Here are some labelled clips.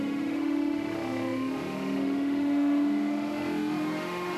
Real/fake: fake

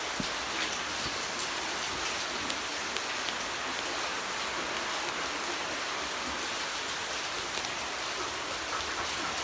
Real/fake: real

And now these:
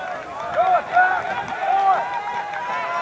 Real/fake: real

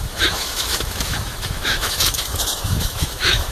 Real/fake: fake